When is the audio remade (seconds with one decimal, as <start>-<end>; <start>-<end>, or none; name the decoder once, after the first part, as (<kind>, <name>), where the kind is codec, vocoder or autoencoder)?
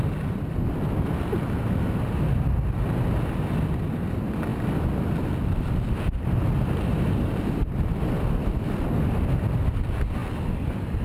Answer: none